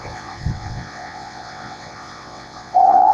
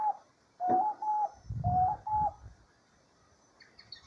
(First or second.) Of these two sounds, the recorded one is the second